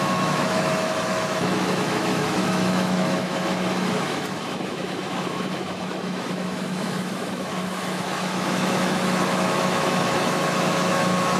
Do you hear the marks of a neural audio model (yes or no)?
yes